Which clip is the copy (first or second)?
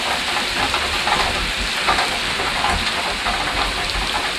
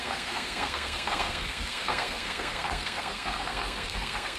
second